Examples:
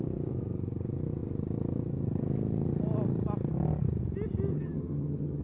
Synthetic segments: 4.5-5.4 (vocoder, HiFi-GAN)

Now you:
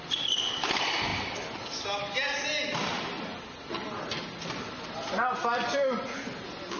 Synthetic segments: none